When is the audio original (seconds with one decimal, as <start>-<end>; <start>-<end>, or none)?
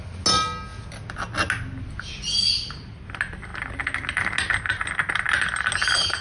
0.0-6.2